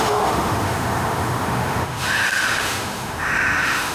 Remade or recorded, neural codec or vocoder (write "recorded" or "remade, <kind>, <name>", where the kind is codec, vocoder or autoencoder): remade, autoencoder, DAC-VAE